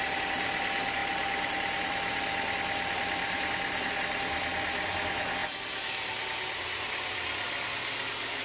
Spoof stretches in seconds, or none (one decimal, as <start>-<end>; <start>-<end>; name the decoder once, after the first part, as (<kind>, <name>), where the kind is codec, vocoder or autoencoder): 1.0-4.0 (vocoder, BigVGAN v2); 5.4-6.6